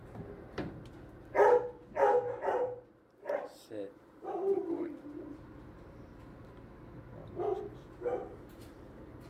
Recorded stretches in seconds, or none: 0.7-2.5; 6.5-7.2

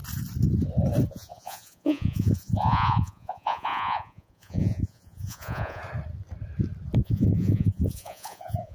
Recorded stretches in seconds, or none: 0.0-1.1; 5.8-7.0